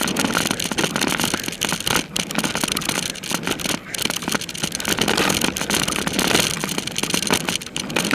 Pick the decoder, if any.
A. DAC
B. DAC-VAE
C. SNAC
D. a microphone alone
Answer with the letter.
D